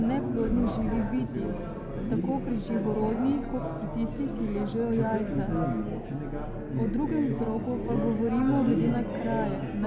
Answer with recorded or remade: recorded